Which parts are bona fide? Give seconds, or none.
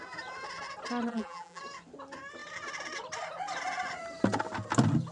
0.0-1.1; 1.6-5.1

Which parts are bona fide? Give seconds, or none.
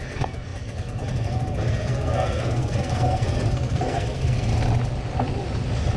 4.5-6.0